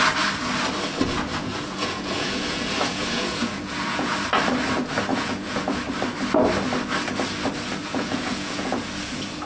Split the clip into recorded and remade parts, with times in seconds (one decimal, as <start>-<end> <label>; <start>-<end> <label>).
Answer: 0.0-1.3 recorded; 1.3-4.2 remade; 4.2-5.1 recorded; 5.1-5.8 remade; 5.8-7.8 recorded; 7.8-8.9 remade; 8.9-9.5 recorded